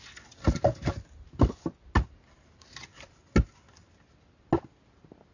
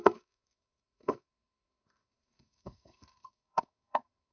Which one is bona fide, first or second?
first